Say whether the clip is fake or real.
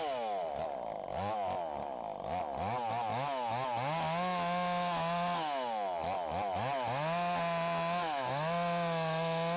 real